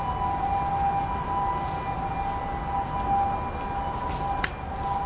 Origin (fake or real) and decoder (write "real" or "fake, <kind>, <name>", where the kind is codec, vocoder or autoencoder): real